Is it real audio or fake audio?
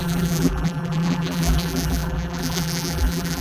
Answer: fake